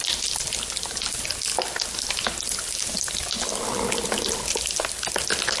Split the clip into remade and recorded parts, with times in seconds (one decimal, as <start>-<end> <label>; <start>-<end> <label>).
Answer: 0.0-5.6 recorded